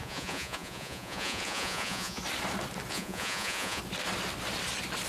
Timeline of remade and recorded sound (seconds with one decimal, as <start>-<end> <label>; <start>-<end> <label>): 0.0-2.2 remade; 2.2-2.9 recorded; 2.9-3.8 remade; 3.8-5.1 recorded